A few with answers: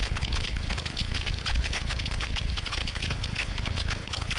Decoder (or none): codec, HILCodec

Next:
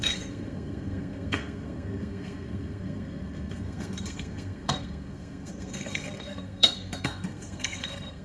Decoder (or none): codec, SNAC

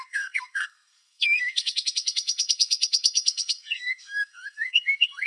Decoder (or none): codec, SNAC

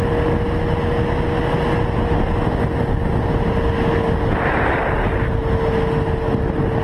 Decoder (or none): none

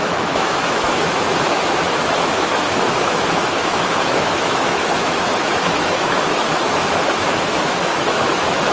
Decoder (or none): autoencoder, DAC-VAE